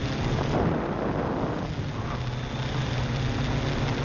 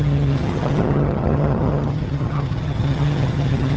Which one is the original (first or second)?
first